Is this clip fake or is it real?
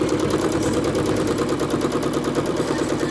fake